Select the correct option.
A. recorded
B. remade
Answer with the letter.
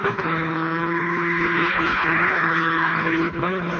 B